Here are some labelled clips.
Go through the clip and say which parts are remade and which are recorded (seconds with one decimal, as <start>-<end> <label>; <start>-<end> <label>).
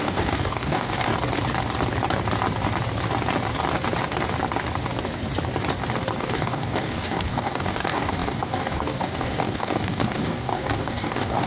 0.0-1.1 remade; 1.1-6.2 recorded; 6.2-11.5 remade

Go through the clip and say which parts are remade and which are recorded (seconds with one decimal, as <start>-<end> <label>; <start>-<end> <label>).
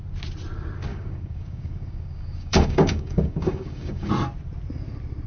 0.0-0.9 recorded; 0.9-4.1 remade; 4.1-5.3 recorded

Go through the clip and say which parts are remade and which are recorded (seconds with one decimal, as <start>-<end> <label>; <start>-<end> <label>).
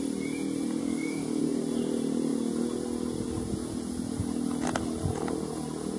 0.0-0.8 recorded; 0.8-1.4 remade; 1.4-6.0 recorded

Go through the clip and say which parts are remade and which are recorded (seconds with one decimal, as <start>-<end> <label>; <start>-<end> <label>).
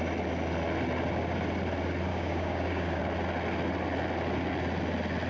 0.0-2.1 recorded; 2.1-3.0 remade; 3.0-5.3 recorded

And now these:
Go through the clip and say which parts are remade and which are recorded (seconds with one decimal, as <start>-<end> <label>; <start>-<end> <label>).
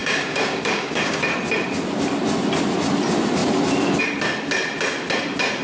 0.0-1.2 remade; 1.2-5.6 recorded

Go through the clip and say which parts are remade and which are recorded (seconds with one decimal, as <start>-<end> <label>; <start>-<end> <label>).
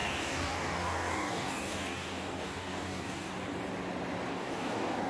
0.0-3.3 remade; 3.3-4.3 recorded; 4.3-5.1 remade